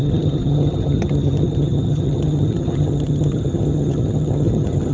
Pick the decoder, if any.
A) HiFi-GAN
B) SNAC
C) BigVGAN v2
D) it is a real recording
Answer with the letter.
A